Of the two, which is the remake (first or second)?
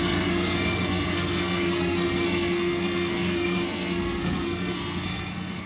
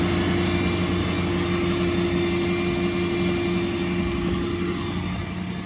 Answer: first